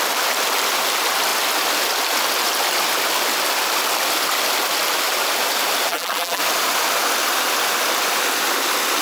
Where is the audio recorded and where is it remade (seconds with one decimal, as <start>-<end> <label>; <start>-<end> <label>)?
0.0-5.9 recorded; 5.9-6.4 remade; 6.4-9.0 recorded